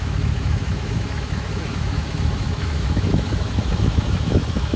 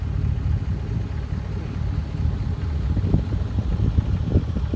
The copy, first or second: first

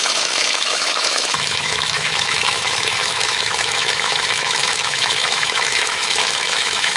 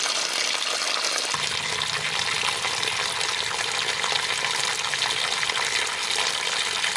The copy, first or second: first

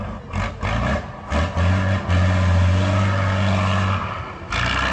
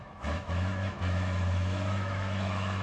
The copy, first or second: second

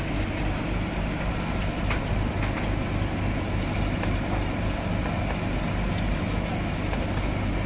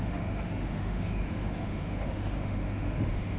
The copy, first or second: second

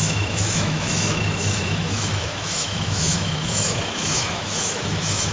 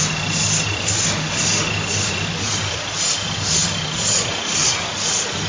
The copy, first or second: first